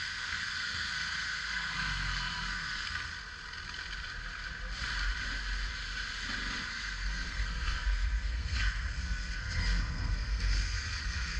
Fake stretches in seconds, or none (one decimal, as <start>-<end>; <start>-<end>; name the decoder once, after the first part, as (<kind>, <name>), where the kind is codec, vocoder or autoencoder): 0.0-3.1 (codec, SNAC); 6.6-11.4